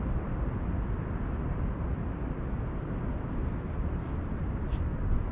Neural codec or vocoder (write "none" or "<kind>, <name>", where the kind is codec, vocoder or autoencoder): none